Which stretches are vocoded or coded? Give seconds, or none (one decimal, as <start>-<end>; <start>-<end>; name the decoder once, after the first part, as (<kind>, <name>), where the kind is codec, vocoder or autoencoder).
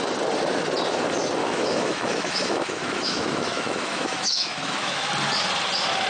1.4-5.1 (autoencoder, DAC-VAE)